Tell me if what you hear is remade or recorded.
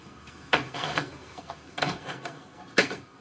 remade